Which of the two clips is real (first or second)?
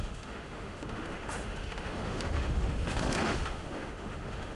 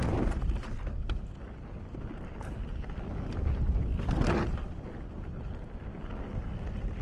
second